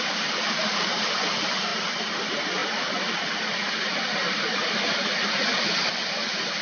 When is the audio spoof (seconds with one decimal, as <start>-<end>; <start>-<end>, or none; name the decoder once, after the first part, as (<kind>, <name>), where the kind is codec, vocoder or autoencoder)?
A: 0.0-1.7 (vocoder, BigVGAN v2); 2.2-6.6